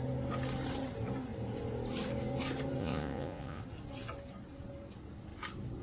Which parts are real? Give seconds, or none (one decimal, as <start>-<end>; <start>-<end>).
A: 0.0-2.8; 3.6-5.8